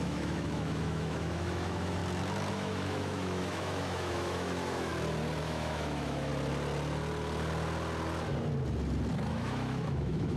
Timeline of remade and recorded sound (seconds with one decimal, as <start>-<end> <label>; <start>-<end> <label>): 0.0-2.0 remade; 2.0-2.5 recorded; 2.5-4.9 remade; 4.9-5.4 recorded; 5.4-6.3 remade; 6.3-9.3 recorded; 9.3-10.4 remade